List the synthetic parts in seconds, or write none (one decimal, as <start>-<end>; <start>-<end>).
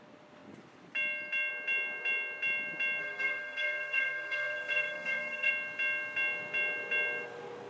3.0-5.5